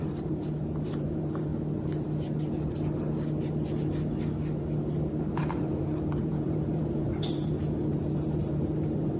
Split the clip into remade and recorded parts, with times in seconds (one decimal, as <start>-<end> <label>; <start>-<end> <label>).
0.0-1.5 remade; 1.5-5.2 recorded; 5.2-9.2 remade